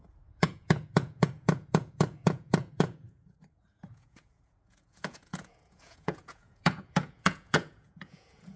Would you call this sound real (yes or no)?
no